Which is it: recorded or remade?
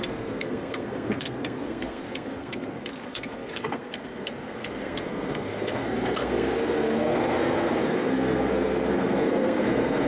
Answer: remade